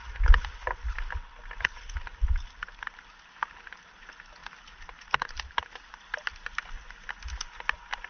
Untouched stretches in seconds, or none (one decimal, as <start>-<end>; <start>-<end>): 0.0-8.1